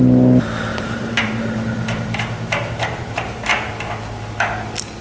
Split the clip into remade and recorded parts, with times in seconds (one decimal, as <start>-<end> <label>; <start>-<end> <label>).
0.0-0.7 recorded; 0.7-3.7 remade; 3.7-5.0 recorded